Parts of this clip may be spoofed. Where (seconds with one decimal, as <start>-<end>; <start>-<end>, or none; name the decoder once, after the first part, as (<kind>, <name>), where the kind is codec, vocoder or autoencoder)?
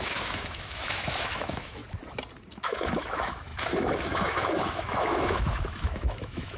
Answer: 0.0-1.8 (autoencoder, DAC-VAE); 2.5-6.6